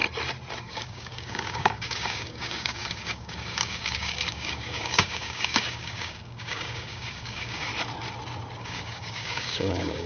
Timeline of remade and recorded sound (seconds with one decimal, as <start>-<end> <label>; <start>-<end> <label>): 0.0-0.6 recorded; 0.6-7.7 remade; 7.7-8.6 recorded; 8.6-10.1 remade